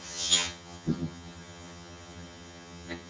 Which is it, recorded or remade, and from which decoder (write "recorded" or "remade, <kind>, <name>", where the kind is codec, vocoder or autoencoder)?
remade, vocoder, HiFi-GAN